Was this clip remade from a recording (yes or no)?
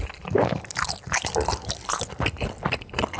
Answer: no